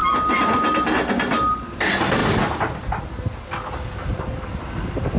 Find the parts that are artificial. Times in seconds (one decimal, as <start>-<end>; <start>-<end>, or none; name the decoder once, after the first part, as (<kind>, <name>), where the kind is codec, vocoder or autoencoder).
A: none